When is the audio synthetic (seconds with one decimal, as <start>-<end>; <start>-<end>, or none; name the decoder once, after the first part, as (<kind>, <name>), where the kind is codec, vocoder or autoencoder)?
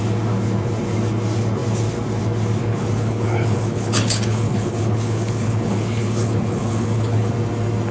2.7-7.3 (codec, HILCodec)